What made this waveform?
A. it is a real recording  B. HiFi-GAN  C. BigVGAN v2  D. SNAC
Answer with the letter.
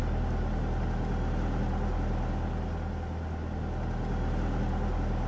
A